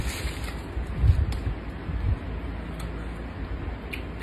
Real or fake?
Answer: real